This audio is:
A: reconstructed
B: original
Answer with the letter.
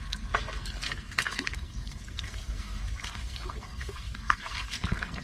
A